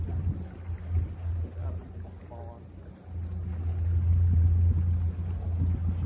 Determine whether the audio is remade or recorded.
recorded